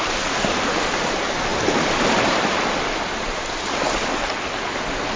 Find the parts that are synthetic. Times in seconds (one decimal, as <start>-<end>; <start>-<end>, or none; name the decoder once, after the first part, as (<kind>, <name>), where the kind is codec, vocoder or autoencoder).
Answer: none